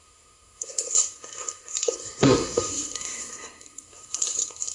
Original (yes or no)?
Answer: no